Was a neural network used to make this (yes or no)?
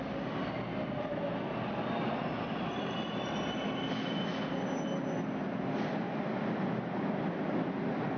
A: no